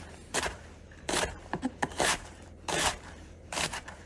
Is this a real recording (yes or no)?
no